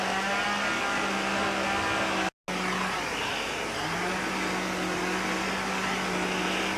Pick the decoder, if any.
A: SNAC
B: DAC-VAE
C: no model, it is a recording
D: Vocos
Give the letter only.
C